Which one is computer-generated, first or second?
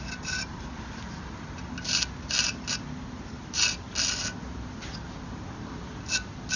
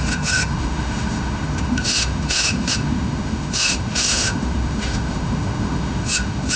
second